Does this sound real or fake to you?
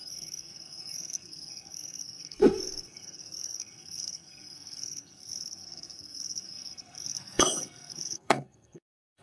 fake